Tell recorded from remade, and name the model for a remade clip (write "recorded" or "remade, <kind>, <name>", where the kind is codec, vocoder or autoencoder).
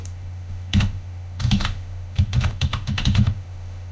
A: remade, autoencoder, DAC-VAE